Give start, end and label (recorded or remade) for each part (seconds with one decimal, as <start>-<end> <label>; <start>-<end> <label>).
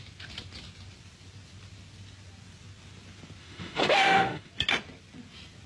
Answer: 0.0-3.4 recorded; 3.4-4.5 remade; 4.5-5.7 recorded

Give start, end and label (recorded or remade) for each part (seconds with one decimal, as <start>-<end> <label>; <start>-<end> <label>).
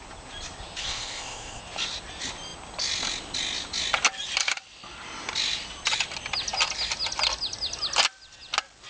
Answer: 0.0-0.8 recorded; 0.8-1.6 remade; 1.6-8.9 recorded